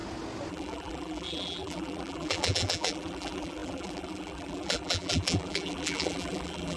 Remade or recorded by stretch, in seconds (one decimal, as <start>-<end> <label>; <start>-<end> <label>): 0.0-0.5 recorded; 0.5-6.8 remade

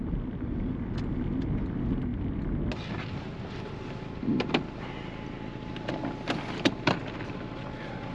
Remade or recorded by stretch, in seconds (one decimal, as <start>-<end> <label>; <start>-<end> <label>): 0.0-8.1 recorded

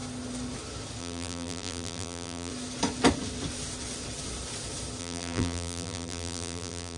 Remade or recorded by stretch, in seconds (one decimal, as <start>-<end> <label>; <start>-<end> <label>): 0.0-1.0 recorded; 1.0-2.5 remade; 2.5-5.0 recorded; 5.0-7.0 remade

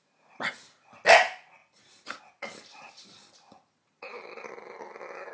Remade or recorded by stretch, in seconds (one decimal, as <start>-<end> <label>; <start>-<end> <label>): 0.0-1.6 recorded; 1.6-4.5 remade; 4.5-5.3 recorded

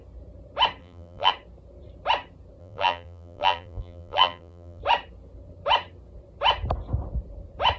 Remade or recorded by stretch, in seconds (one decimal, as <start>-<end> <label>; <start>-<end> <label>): 0.0-0.8 recorded; 0.8-1.3 remade; 1.3-2.6 recorded; 2.6-4.8 remade; 4.8-7.8 recorded

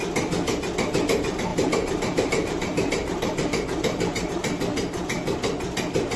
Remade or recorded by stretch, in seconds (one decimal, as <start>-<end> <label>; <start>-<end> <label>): 0.0-1.5 recorded; 1.5-4.3 remade; 4.3-6.2 recorded

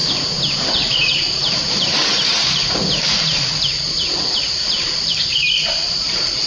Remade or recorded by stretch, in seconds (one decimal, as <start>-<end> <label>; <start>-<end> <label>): 0.0-0.6 recorded; 0.6-6.5 remade

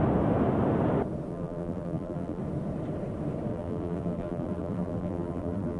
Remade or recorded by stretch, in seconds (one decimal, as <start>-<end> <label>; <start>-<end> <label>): 0.0-1.3 recorded; 1.3-2.4 remade; 2.4-3.5 recorded; 3.5-5.8 remade